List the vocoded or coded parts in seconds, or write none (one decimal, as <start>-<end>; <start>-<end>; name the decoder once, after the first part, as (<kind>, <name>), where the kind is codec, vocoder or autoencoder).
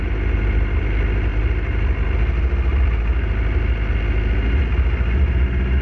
none